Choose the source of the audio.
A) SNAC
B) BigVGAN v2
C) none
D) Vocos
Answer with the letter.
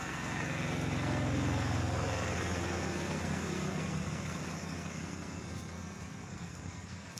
A